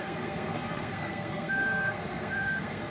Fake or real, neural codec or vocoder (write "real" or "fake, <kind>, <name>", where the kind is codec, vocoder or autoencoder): fake, codec, SNAC